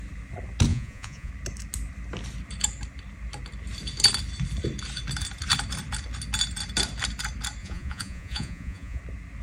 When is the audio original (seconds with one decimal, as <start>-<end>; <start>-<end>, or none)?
0.0-0.7; 1.3-7.6; 9.0-9.4

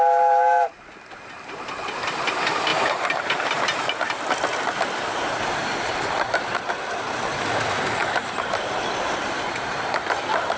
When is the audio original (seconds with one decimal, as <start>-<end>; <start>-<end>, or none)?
0.0-2.7; 3.6-5.6; 6.7-8.0; 8.7-10.6

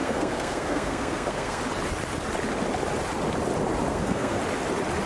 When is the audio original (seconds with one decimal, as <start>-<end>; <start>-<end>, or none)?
1.6-3.9; 4.4-5.1

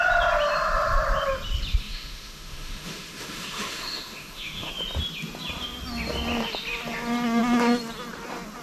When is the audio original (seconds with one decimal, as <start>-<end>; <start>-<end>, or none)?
0.0-1.8; 4.7-8.6

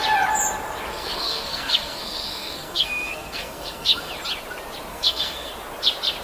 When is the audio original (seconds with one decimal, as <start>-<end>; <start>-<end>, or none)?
0.0-0.9; 4.1-4.9; 5.5-6.2